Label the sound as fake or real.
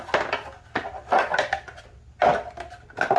real